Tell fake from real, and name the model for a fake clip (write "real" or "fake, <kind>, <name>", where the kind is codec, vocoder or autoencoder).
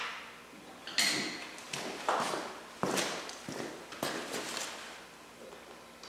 real